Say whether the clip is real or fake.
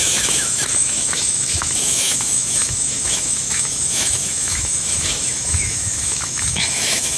fake